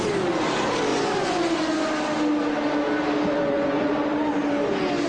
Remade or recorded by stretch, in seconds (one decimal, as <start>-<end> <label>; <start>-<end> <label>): 0.0-0.9 recorded; 0.9-1.9 remade; 1.9-3.4 recorded; 3.4-3.9 remade; 3.9-5.1 recorded